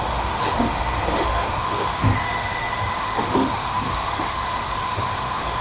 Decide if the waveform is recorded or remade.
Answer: remade